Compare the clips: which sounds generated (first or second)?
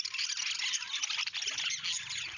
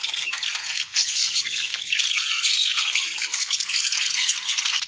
second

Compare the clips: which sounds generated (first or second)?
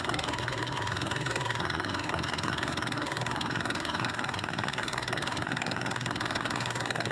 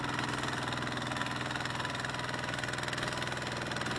first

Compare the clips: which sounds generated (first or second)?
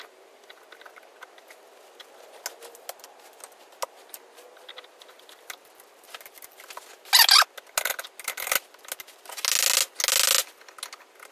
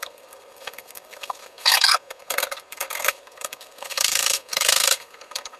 second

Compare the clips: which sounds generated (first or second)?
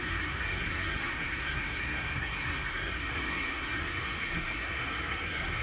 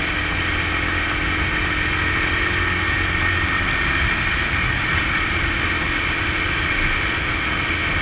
first